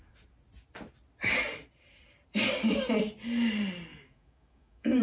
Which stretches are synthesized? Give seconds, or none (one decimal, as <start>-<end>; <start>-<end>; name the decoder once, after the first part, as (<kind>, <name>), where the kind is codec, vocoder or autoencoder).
3.9-5.0 (autoencoder, DAC-VAE)